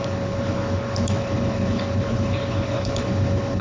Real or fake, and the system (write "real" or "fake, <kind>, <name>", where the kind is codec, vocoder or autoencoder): fake, codec, HILCodec